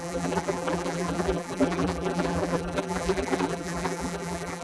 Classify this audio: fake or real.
fake